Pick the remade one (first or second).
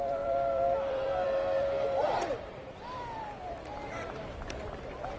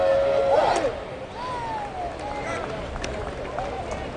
first